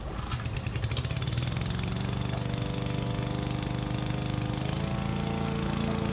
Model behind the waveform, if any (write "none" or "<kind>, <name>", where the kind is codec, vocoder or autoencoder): none